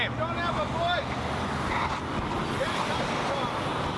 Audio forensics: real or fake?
real